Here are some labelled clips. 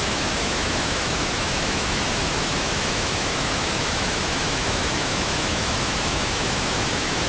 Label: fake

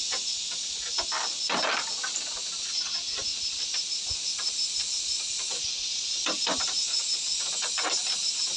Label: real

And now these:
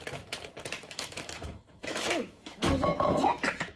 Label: fake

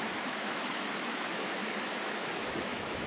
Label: fake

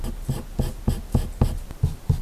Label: real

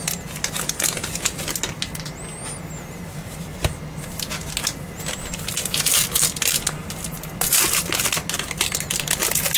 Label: real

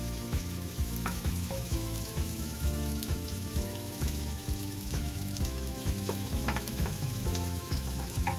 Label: fake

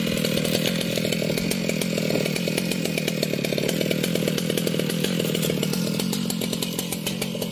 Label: real